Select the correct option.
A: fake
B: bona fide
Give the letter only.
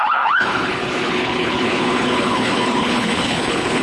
A